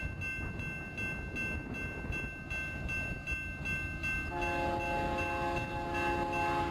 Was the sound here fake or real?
real